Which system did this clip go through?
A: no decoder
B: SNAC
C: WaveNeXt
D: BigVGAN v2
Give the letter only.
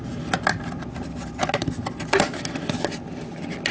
A